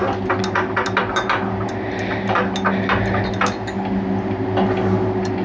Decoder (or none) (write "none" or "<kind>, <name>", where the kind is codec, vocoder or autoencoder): none